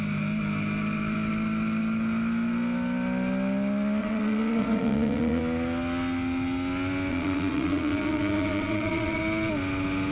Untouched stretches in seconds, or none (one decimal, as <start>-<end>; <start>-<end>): 0.0-4.0; 5.4-7.1; 9.2-10.1